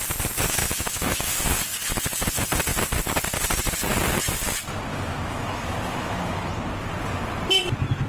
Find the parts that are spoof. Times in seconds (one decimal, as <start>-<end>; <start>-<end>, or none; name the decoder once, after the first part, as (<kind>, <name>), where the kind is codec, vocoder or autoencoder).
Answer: 0.6-1.4 (autoencoder, DAC-VAE); 4.9-6.5